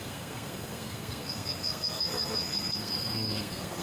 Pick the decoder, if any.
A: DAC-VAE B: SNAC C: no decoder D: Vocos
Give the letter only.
B